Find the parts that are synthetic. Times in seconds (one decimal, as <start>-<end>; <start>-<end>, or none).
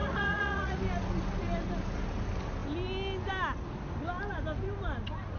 0.0-0.8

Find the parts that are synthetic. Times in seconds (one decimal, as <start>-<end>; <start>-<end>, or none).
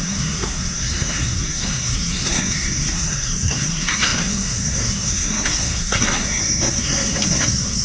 0.0-7.8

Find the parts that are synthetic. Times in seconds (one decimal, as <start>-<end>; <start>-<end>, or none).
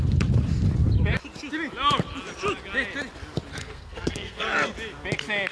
3.6-4.4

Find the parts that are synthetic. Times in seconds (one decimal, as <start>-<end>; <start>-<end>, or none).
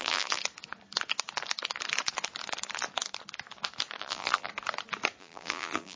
0.0-0.4; 4.0-4.5; 5.2-6.0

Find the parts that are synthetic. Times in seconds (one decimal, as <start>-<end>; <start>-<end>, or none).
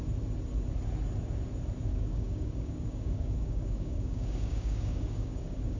1.9-5.8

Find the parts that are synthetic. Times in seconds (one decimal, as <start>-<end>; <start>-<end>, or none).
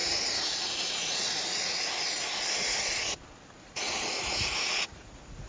0.0-1.9; 4.1-5.5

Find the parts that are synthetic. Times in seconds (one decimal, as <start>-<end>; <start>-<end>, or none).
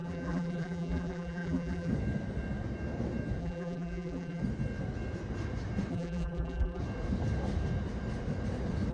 0.0-1.9; 3.4-4.4; 5.9-6.8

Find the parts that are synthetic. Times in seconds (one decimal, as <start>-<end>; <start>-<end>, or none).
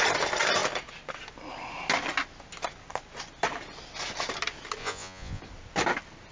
4.8-5.4